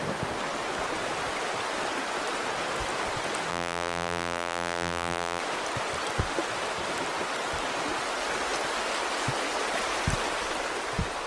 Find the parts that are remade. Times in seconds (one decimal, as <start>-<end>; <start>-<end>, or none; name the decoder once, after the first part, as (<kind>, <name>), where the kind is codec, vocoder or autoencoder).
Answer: 3.5-5.4 (vocoder, BigVGAN v2)